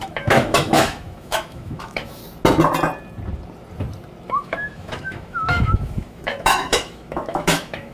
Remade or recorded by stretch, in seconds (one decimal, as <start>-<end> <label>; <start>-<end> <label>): 0.0-2.2 remade; 2.2-4.3 recorded; 4.3-7.9 remade